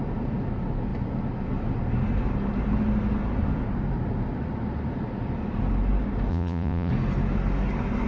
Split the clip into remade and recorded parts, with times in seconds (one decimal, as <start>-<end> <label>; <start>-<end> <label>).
0.0-6.3 recorded; 6.3-6.9 remade; 6.9-8.1 recorded